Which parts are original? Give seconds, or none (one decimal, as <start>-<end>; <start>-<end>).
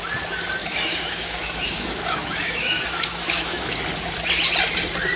0.0-0.6; 3.7-5.2